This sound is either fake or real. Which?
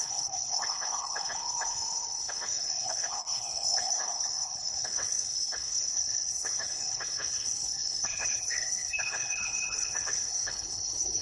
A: fake